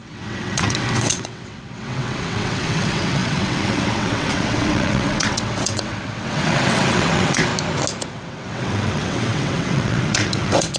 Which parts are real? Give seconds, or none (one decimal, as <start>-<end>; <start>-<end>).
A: 7.5-8.1